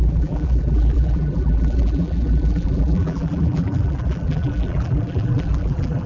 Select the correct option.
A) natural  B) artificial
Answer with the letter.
B